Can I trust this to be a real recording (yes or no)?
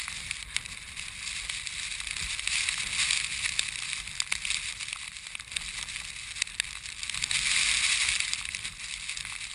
yes